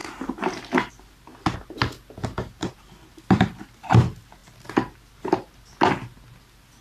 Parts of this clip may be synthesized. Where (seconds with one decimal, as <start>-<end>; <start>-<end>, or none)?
none